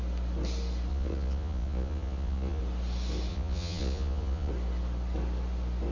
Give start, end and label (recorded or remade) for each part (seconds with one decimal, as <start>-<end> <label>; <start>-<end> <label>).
0.0-0.9 recorded; 0.9-2.6 remade; 2.6-3.3 recorded; 3.3-4.5 remade; 4.5-5.9 recorded